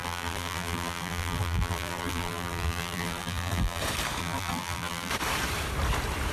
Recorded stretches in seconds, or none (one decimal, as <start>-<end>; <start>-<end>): 3.8-4.2; 5.1-6.3